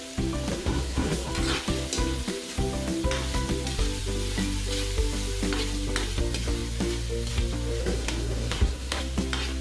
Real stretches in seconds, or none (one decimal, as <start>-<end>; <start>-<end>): 0.0-0.5; 1.3-7.8; 9.0-9.6